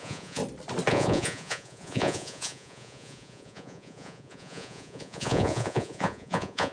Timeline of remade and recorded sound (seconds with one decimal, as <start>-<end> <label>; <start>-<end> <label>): 0.0-0.4 remade; 0.4-0.9 recorded; 0.9-6.7 remade